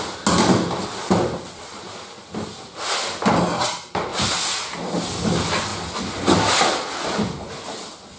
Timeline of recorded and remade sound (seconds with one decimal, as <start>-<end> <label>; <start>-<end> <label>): 0.0-8.2 recorded